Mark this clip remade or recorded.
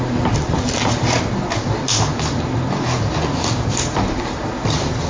recorded